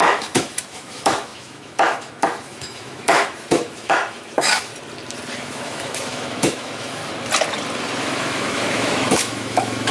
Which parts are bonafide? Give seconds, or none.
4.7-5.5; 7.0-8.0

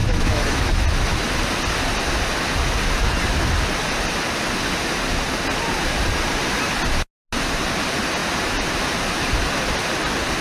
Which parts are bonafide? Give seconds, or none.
0.7-10.4